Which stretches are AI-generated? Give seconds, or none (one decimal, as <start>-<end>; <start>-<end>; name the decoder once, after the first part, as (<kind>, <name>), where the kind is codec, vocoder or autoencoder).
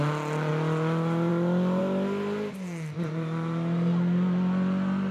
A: none